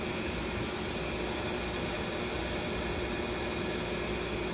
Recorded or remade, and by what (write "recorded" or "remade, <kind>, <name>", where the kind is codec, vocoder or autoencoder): recorded